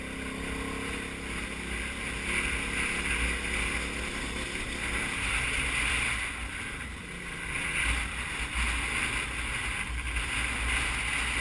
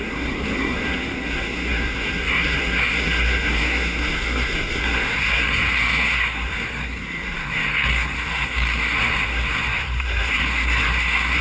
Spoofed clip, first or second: second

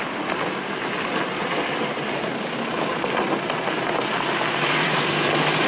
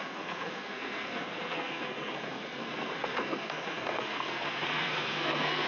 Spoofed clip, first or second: second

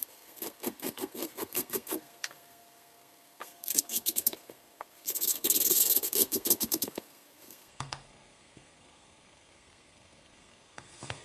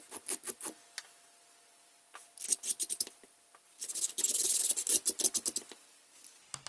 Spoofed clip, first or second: first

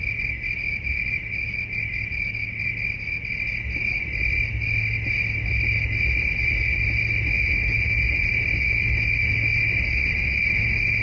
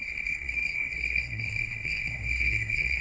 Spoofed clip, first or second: second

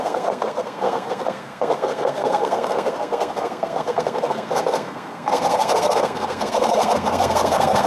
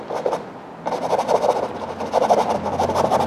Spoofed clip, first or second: first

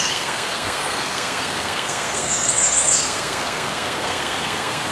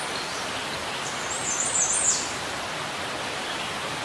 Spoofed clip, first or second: first